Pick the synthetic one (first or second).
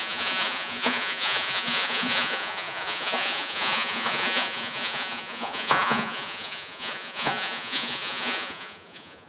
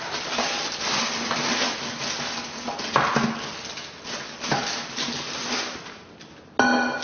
first